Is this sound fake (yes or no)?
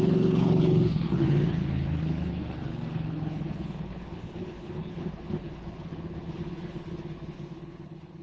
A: yes